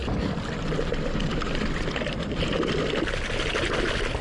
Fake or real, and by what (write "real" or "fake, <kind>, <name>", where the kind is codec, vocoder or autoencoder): real